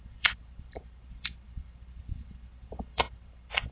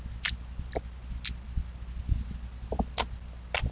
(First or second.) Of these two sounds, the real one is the second